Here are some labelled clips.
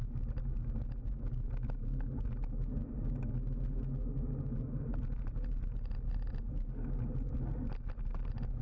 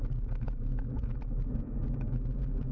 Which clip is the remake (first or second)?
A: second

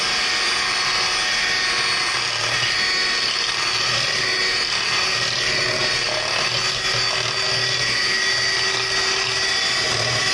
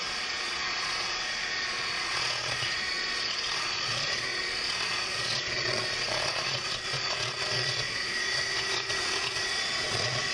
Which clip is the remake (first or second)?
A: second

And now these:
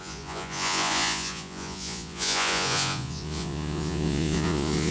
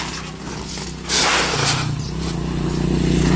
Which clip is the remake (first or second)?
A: first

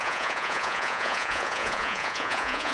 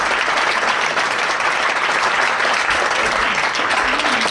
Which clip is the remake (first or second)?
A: first